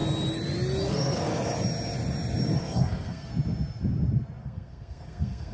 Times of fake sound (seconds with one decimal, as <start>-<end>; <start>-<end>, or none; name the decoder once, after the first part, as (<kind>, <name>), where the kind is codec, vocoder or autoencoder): 0.9-1.3 (codec, SNAC); 2.6-3.3; 4.4-5.5